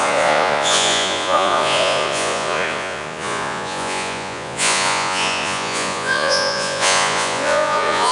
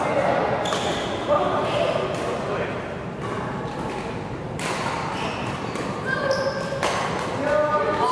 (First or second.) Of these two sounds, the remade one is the first